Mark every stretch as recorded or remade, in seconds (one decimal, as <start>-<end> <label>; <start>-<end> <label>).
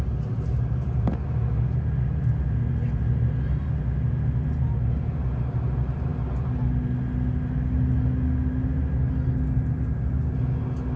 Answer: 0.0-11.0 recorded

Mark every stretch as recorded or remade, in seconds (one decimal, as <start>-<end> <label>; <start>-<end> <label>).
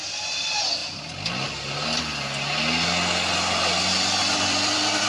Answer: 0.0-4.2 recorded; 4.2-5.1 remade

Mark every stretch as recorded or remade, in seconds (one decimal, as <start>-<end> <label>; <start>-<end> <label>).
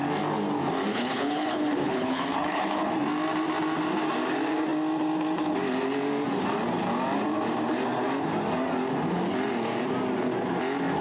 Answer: 0.0-0.9 recorded; 0.9-2.9 remade; 2.9-11.0 recorded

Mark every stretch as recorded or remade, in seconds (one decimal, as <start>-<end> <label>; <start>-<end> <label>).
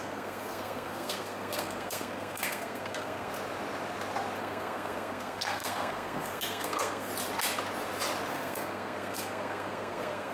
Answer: 0.0-3.3 remade; 3.3-4.4 recorded; 4.4-7.1 remade; 7.1-8.3 recorded; 8.3-10.3 remade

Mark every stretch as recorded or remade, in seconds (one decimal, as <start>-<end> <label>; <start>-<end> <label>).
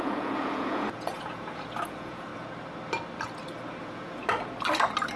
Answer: 0.0-2.3 remade; 2.3-3.8 recorded; 3.8-4.2 remade; 4.2-5.2 recorded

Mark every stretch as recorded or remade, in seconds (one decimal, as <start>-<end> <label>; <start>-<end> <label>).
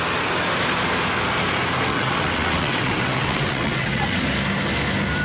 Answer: 0.0-1.9 recorded; 1.9-4.2 remade; 4.2-5.2 recorded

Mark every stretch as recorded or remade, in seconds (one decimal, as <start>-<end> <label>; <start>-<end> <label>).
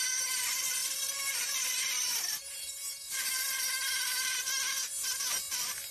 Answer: 0.0-2.1 recorded; 2.1-4.4 remade; 4.4-5.9 recorded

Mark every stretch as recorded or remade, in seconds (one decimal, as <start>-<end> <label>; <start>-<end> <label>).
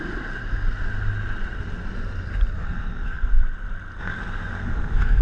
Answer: 0.0-2.6 recorded; 2.6-3.3 remade; 3.3-4.0 recorded; 4.0-5.2 remade